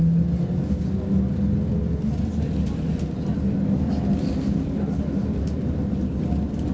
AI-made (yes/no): no